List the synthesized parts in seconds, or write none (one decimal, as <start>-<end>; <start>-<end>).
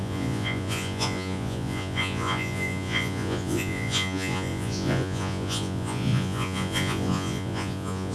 0.0-8.1